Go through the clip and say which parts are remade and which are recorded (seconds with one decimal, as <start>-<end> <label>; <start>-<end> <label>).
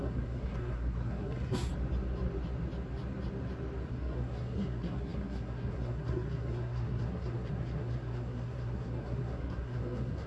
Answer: 0.0-1.7 remade; 1.7-3.9 recorded; 3.9-10.3 remade